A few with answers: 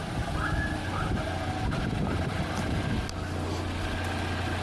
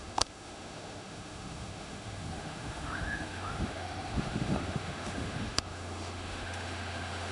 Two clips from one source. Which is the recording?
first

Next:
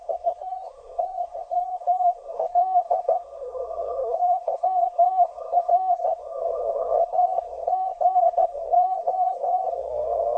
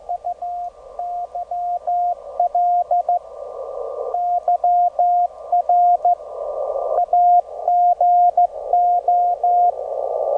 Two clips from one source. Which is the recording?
second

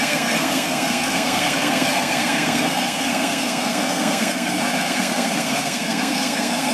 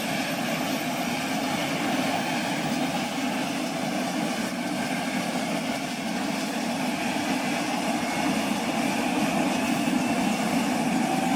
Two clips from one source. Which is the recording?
second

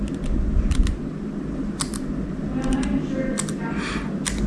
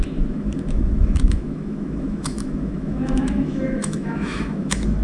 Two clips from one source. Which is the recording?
first